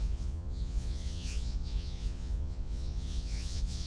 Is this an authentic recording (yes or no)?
no